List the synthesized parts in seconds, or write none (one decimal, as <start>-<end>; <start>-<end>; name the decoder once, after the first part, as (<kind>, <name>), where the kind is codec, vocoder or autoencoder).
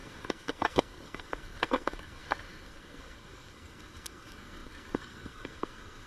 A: 0.0-6.1 (codec, SNAC)